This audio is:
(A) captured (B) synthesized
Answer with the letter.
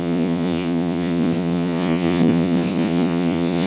B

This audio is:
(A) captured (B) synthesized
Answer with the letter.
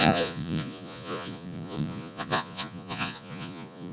B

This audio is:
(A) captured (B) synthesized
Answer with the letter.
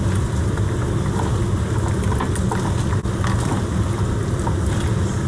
A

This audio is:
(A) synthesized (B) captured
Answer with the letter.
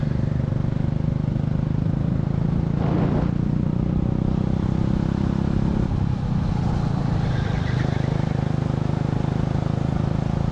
B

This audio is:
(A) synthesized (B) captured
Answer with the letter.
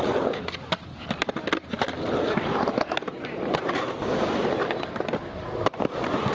B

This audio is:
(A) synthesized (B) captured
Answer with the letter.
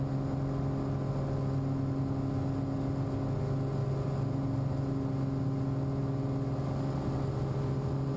B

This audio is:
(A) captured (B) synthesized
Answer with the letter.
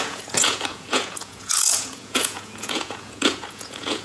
B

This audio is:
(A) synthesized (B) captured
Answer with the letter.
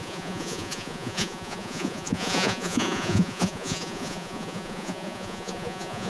A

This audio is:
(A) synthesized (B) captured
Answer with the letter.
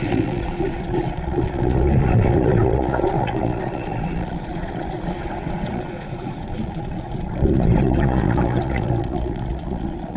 A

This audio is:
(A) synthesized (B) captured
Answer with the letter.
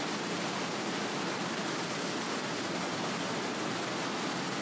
B